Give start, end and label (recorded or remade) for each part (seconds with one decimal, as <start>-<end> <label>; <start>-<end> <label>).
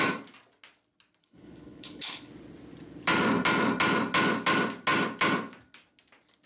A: 0.0-1.2 recorded; 1.2-2.3 remade; 2.3-6.5 recorded